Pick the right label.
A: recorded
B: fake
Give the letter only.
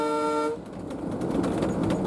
A